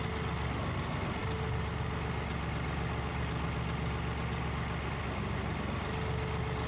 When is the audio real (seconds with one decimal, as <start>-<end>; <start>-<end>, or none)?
0.0-6.7